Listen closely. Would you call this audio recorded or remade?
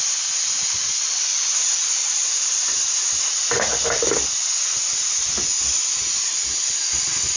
recorded